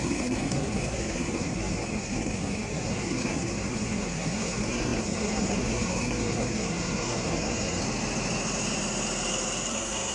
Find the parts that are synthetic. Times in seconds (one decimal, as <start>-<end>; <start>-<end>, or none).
0.0-7.8; 9.7-10.1